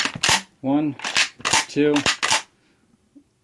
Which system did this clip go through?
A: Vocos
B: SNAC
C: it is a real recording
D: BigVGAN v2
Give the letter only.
C